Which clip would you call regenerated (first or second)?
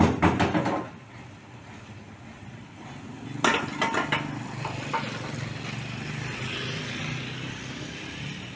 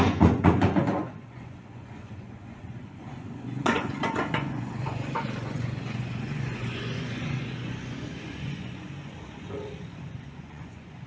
second